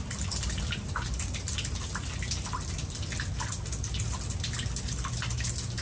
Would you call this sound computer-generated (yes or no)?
no